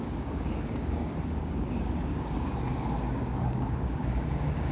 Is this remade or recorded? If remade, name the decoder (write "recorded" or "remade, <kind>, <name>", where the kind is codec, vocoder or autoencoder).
remade, codec, DAC